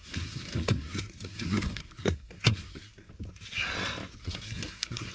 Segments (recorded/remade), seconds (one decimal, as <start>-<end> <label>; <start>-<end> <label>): 0.0-3.1 remade; 3.1-4.2 recorded; 4.2-5.1 remade

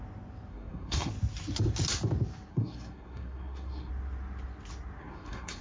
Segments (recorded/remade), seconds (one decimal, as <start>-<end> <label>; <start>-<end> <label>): 0.0-0.5 recorded; 0.5-1.1 remade; 1.1-2.5 recorded; 2.5-3.9 remade; 3.9-5.0 recorded; 5.0-5.6 remade

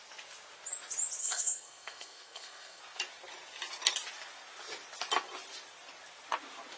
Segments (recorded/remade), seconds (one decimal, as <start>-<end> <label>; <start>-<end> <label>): 0.0-1.2 recorded; 1.2-2.8 remade; 2.8-6.8 recorded

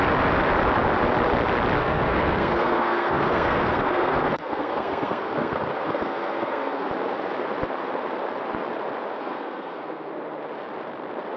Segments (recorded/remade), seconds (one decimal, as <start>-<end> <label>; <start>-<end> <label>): 0.0-1.8 recorded; 1.8-6.9 remade; 6.9-9.2 recorded; 9.2-10.1 remade; 10.1-11.4 recorded